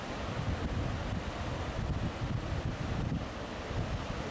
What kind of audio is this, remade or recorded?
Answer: recorded